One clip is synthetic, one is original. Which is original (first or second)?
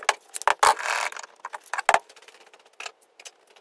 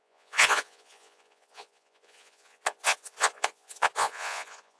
first